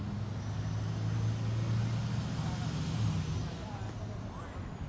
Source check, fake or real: real